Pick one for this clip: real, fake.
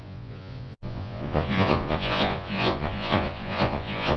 fake